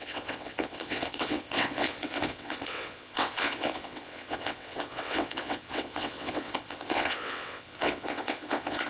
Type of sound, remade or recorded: remade